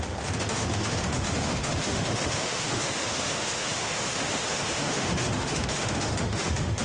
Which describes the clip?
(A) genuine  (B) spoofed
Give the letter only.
B